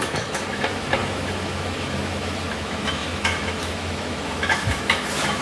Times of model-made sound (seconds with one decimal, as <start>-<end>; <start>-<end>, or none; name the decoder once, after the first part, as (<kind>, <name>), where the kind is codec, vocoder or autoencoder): 0.0-5.4 (autoencoder, DAC-VAE)

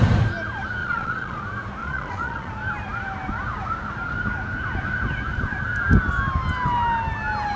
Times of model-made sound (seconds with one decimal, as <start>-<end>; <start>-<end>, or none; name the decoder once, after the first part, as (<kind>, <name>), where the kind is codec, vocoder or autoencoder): 0.8-1.4 (vocoder, Vocos); 1.8-2.5

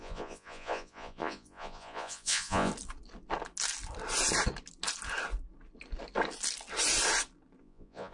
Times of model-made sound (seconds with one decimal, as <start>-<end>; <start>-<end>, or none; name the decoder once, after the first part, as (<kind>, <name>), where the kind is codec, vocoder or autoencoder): 0.0-2.7 (vocoder, Vocos); 7.6-8.1